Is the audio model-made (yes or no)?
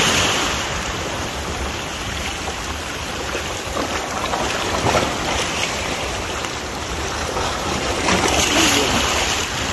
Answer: yes